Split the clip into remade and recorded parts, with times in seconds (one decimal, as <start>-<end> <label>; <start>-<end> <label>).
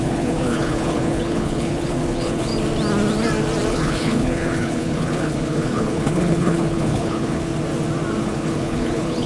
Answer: 0.0-2.5 remade; 2.5-3.7 recorded; 3.7-7.5 remade; 7.5-8.2 recorded; 8.2-9.3 remade